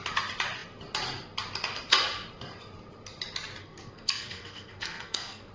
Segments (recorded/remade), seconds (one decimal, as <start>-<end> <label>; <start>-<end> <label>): 0.0-3.6 recorded; 3.6-5.5 remade